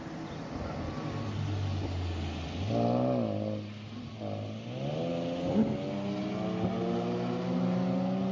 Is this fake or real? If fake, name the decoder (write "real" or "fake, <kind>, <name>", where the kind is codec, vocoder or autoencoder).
real